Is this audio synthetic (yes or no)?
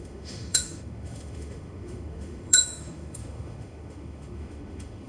yes